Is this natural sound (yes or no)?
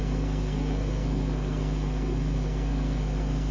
no